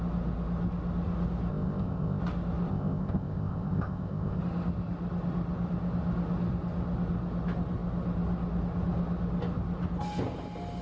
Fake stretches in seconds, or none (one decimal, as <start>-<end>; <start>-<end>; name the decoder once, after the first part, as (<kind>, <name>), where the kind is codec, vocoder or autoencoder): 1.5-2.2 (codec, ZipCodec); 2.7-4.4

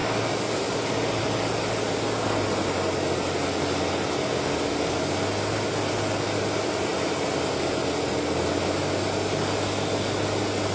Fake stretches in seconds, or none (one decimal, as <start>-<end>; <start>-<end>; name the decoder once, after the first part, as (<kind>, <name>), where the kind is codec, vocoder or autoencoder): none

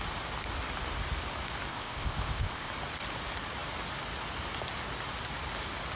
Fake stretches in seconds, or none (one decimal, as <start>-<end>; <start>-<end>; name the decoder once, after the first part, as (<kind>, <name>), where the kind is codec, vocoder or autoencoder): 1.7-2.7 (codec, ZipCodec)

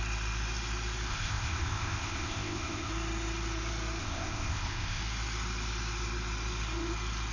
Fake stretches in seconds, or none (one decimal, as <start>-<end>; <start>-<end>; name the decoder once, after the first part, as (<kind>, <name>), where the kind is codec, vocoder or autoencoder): 1.1-2.9 (codec, ZipCodec); 4.0-5.0

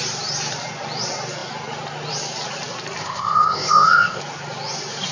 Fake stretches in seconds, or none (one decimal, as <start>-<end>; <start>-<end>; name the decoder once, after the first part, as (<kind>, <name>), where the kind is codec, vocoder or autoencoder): 3.0-4.2 (codec, ZipCodec)

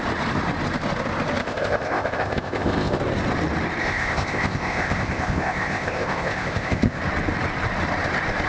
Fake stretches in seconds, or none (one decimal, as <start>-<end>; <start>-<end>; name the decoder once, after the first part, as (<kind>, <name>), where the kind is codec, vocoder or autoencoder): 1.4-3.0 (codec, ZipCodec); 3.8-7.0

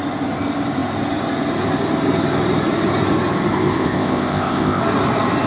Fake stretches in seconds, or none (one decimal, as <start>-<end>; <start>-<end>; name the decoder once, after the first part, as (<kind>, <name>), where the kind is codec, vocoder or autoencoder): 3.5-4.8 (codec, ZipCodec)

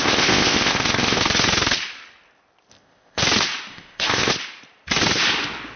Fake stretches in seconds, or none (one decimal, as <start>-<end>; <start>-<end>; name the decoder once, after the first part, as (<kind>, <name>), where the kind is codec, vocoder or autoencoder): 0.0-1.2 (codec, ZipCodec); 2.7-3.2; 3.7-4.3